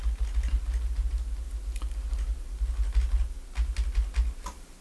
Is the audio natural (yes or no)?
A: yes